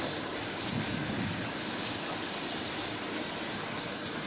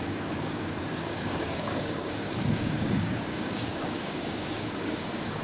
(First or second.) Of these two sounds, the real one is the first